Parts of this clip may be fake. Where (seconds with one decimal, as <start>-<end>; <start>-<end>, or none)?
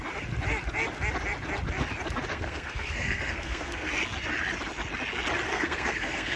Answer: 2.3-3.9; 5.5-6.4